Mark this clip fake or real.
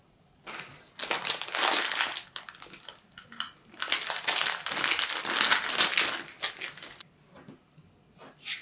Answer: real